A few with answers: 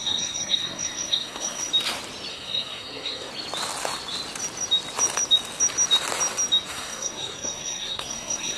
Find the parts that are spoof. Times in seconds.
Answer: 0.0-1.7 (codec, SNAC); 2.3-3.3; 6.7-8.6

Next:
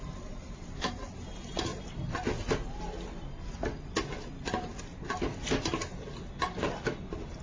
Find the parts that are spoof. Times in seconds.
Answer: none

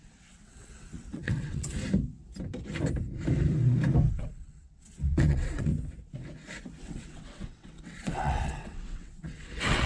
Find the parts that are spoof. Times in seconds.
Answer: 0.0-1.8 (vocoder, WaveNeXt); 4.1-5.7; 6.8-9.9

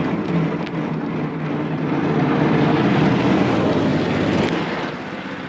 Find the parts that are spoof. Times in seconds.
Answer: none

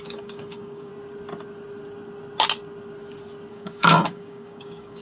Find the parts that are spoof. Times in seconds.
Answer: 0.0-0.9 (codec, DAC); 3.5-5.0

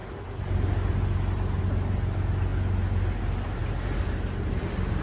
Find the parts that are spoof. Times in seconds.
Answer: none

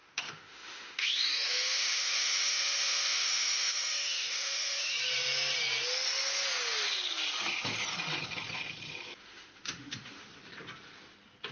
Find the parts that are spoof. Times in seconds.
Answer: 0.0-4.9 (autoencoder, DAC-VAE); 9.2-10.3

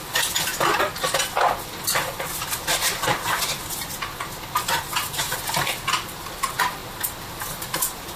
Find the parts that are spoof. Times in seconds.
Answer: 0.0-0.5 (vocoder, BigVGAN v2); 4.8-6.8; 7.3-8.2